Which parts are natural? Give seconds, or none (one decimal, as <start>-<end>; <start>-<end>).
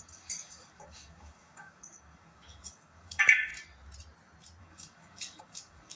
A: 3.5-4.6